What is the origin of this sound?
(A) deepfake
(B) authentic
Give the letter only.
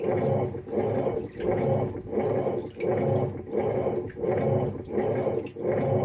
B